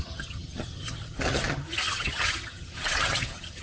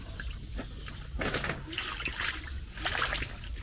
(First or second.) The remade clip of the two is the first